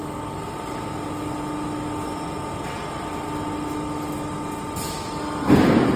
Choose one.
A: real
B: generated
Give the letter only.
A